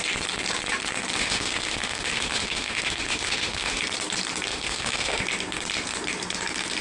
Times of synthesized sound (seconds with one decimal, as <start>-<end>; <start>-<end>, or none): 1.2-3.8; 4.5-5.2